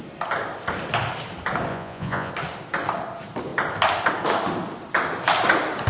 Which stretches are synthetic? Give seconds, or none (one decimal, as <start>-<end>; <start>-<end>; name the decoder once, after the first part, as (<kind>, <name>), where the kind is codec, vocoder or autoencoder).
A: 1.7-2.3 (vocoder, Vocos)